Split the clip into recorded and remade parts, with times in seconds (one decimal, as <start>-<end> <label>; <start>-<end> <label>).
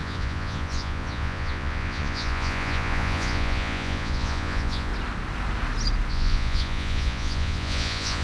0.0-4.9 remade; 4.9-6.1 recorded; 6.1-8.2 remade